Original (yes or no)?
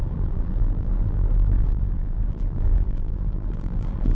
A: no